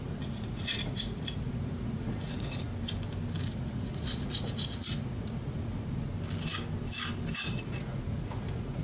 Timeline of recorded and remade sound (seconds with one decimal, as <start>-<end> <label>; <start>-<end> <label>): 0.0-2.7 remade; 2.7-3.4 recorded; 3.4-6.1 remade; 6.1-7.3 recorded; 7.3-8.8 remade